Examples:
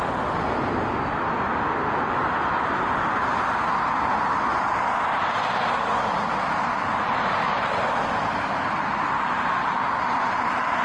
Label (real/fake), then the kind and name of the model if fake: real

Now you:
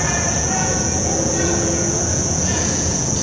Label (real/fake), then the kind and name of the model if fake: fake, vocoder, Vocos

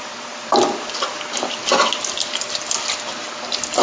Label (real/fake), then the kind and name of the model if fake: real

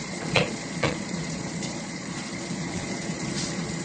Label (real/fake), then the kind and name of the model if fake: fake, vocoder, Vocos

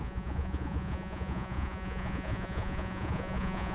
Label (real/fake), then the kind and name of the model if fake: fake, vocoder, Vocos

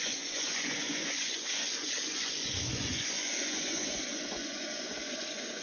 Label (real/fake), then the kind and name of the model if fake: fake, vocoder, Vocos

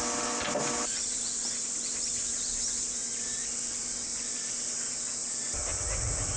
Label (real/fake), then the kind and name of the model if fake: real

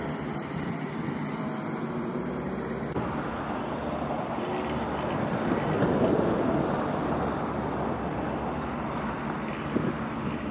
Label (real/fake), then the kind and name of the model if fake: real